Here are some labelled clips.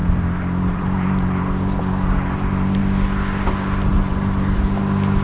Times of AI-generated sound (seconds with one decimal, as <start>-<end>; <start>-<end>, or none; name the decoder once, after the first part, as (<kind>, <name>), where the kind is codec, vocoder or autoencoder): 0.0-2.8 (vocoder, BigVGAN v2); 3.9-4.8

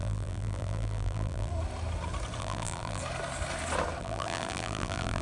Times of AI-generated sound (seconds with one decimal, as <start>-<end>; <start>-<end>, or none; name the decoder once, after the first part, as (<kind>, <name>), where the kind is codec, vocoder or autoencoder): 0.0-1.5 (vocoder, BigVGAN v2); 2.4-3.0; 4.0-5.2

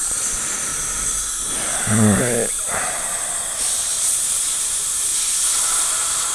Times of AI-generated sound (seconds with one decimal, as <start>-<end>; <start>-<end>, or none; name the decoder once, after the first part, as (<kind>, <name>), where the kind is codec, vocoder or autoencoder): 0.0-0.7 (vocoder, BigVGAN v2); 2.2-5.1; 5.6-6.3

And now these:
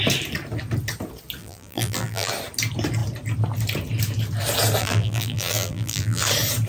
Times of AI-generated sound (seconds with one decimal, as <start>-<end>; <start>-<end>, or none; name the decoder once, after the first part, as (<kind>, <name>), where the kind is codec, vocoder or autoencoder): 1.4-2.3 (vocoder, BigVGAN v2); 4.8-6.2

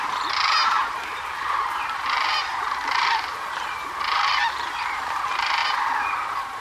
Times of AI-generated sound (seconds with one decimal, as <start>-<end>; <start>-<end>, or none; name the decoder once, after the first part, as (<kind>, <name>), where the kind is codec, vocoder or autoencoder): 0.0-6.6 (vocoder, BigVGAN v2)